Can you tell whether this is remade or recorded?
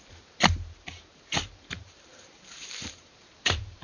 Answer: remade